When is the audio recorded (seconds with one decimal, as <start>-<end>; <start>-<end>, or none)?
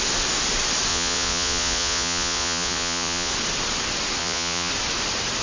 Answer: 0.0-0.9; 3.3-4.2; 4.7-5.4